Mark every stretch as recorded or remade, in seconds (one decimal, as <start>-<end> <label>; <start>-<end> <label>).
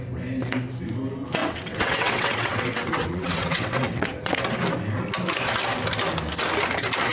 0.0-1.4 recorded; 1.4-4.4 remade; 4.4-7.1 recorded